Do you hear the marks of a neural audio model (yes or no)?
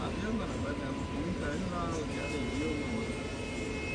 no